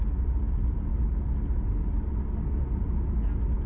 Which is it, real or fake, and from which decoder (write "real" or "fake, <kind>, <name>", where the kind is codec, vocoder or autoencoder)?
real